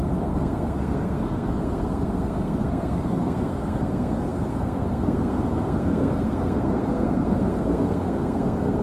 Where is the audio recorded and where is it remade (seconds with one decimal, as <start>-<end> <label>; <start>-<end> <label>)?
0.0-8.8 remade